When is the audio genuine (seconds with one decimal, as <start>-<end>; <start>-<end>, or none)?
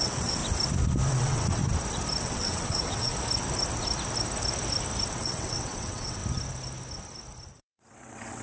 0.4-1.1; 1.6-2.2; 3.1-5.2; 6.2-7.5